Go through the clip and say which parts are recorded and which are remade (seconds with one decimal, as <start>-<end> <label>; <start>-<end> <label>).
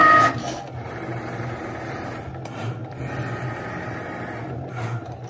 0.0-5.3 recorded